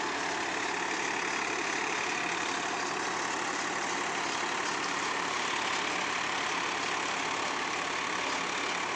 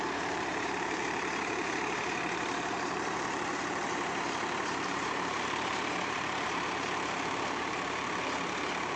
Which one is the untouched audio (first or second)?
first